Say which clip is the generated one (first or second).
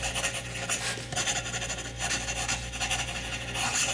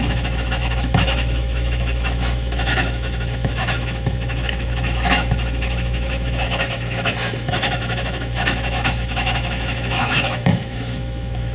second